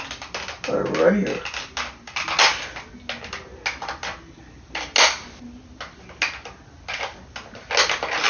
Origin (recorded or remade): recorded